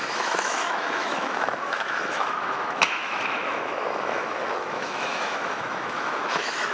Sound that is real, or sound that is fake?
fake